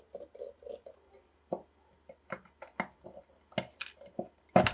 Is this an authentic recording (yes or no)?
yes